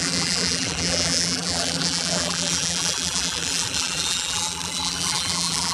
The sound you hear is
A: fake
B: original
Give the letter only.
A